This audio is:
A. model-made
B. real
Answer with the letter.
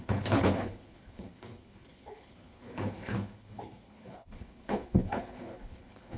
A